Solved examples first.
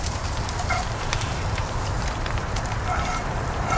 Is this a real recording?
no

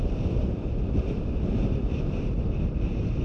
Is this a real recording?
yes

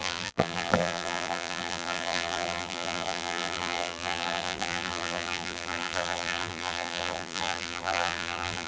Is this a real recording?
no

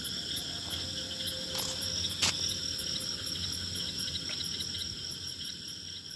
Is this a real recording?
yes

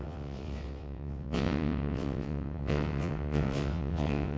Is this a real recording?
no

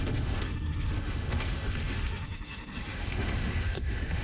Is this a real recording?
no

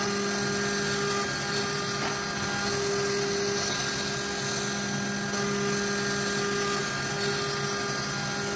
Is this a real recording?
yes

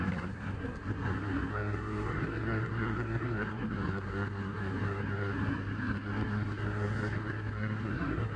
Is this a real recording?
no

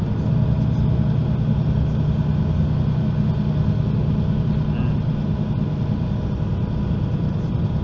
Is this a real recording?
yes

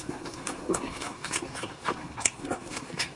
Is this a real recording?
no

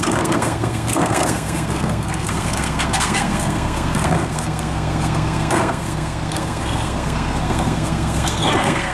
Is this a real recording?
no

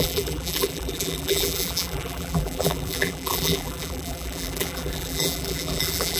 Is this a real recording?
no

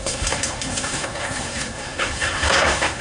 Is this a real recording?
no